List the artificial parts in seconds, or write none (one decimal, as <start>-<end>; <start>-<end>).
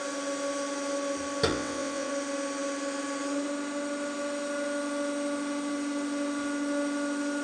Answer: 1.5-2.1